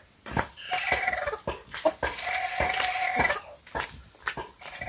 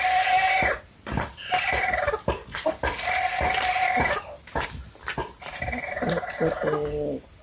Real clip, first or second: first